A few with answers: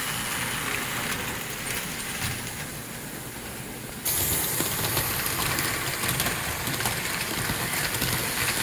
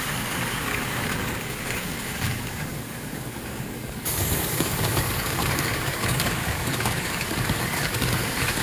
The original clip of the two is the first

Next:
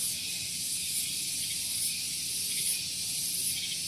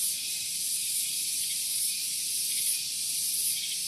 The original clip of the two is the first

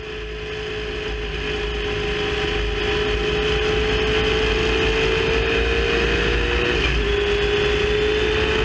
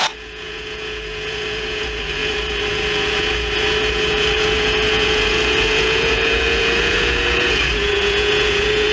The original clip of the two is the first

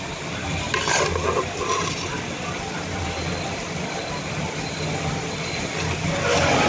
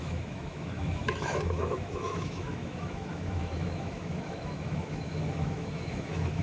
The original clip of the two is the first